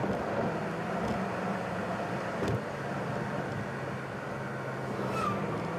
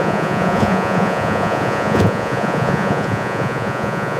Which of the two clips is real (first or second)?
first